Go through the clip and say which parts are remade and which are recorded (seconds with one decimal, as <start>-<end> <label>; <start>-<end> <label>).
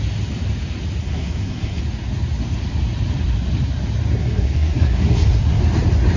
0.0-1.0 recorded; 1.0-1.8 remade; 1.8-4.2 recorded; 4.2-5.6 remade; 5.6-6.2 recorded